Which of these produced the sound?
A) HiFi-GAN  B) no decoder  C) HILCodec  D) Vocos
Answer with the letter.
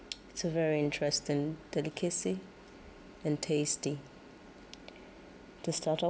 B